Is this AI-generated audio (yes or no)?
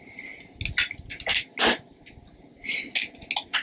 no